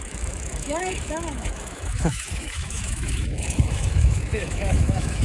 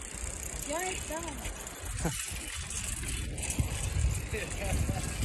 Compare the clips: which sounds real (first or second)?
second